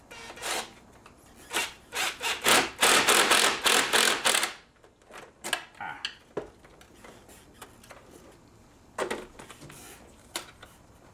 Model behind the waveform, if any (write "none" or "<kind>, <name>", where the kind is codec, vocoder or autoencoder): none